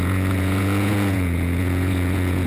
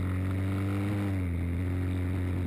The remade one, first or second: first